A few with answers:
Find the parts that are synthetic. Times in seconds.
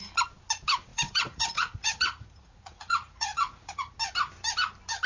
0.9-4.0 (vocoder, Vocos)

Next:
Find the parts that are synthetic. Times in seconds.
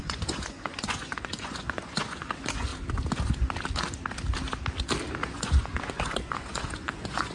0.0-2.7 (vocoder, Vocos); 5.3-7.3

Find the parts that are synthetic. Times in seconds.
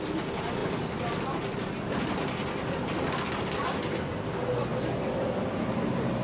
none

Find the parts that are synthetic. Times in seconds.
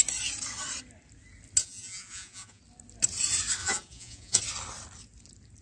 1.6-2.6 (vocoder, Vocos); 3.6-4.4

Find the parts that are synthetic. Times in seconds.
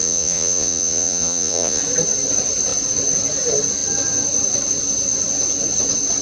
0.0-1.8 (vocoder, Vocos)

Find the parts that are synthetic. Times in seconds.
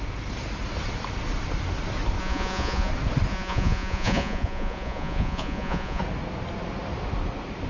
2.2-2.9 (vocoder, Vocos); 3.3-6.0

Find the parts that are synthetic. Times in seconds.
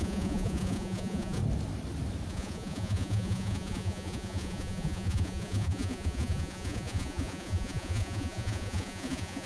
0.0-1.4 (vocoder, Vocos); 2.3-9.5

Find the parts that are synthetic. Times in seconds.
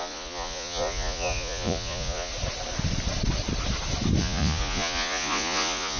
0.0-2.3 (vocoder, Vocos); 4.2-6.0